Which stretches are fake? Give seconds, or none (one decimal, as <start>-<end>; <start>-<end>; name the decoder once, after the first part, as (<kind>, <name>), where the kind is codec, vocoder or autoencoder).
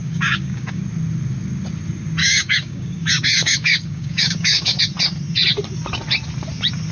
0.0-0.8 (codec, DAC); 2.2-4.8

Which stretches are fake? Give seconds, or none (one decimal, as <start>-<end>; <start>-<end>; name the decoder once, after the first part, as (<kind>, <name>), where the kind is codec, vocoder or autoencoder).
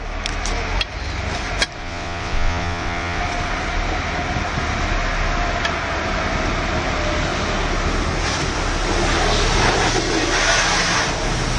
1.8-3.2 (vocoder, WaveNeXt)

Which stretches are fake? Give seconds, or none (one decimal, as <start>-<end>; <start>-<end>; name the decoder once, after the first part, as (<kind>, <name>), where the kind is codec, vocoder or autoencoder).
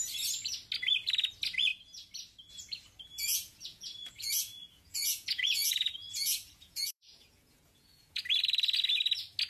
3.3-8.2 (vocoder, Vocos)